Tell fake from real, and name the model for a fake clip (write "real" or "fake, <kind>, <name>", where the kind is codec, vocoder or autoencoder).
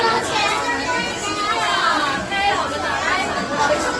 real